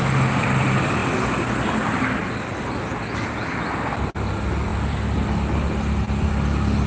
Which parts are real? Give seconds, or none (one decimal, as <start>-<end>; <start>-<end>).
0.0-6.9